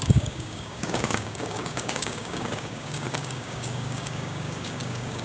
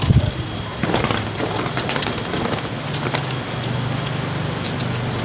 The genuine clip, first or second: second